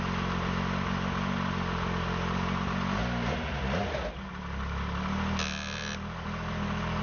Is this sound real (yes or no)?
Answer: yes